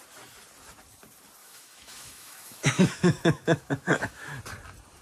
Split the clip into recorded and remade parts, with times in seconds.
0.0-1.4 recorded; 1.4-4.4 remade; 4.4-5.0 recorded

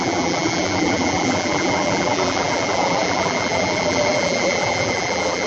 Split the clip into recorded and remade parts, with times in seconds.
0.0-5.5 remade

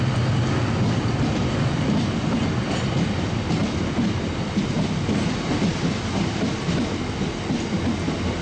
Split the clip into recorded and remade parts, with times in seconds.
0.0-3.6 recorded; 3.6-4.7 remade; 4.7-5.7 recorded; 5.7-7.1 remade; 7.1-8.4 recorded

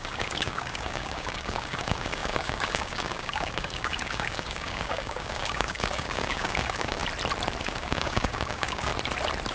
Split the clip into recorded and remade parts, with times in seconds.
0.0-7.0 remade; 7.0-7.6 recorded; 7.6-8.9 remade; 8.9-9.5 recorded

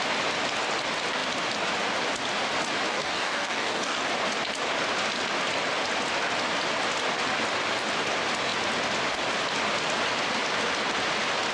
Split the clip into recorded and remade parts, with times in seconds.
0.0-2.9 recorded; 2.9-4.0 remade; 4.0-11.5 recorded

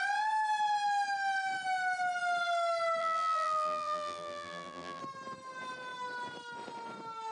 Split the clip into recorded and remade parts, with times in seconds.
0.0-3.0 recorded; 3.0-5.0 remade; 5.0-7.3 recorded